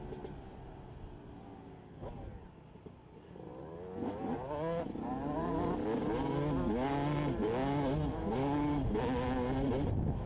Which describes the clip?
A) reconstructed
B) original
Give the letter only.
B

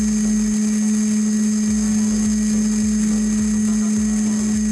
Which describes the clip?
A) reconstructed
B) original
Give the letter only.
B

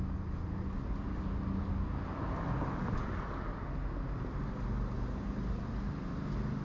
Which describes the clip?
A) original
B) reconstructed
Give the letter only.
A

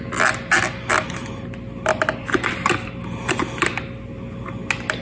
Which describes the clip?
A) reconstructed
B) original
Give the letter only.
B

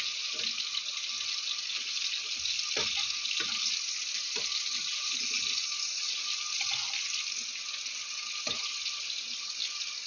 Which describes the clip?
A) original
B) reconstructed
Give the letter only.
A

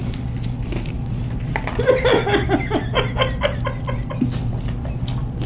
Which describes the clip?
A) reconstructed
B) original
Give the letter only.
B